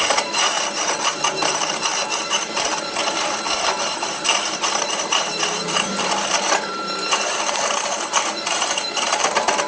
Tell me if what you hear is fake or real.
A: fake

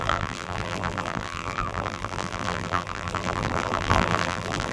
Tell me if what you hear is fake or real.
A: fake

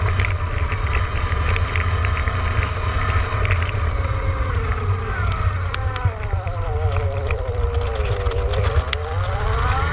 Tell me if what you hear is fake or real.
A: real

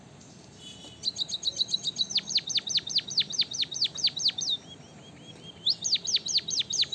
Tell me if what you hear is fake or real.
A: real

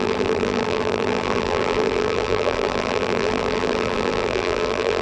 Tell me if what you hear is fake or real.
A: fake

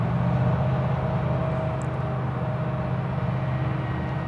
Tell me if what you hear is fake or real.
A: real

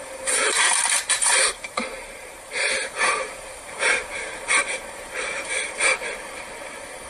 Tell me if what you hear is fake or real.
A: fake